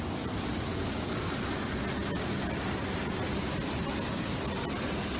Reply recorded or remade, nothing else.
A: recorded